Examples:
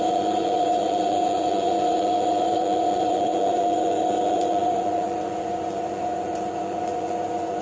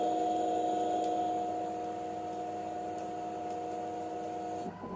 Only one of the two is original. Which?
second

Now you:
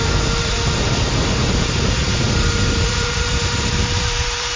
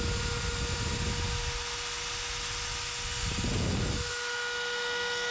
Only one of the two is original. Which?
second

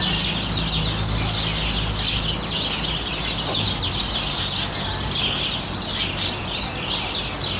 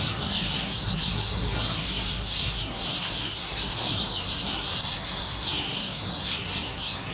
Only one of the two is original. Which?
first